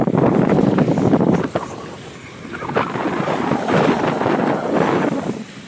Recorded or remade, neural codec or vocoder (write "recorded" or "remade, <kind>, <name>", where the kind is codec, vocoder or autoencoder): recorded